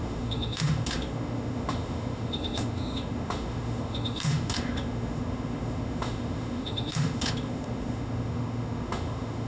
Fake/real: fake